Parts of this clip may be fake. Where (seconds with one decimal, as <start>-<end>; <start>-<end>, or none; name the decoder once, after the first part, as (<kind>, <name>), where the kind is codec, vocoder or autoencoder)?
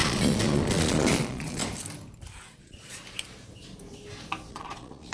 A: 0.0-1.6 (vocoder, Vocos); 2.6-3.0; 4.5-5.1